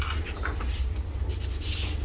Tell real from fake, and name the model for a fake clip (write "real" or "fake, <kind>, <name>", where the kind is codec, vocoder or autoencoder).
real